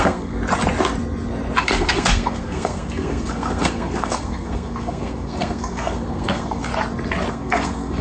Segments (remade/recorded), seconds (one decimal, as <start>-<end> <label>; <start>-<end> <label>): 0.0-0.4 remade; 0.4-1.6 recorded; 1.6-6.7 remade; 6.7-7.3 recorded; 7.3-8.0 remade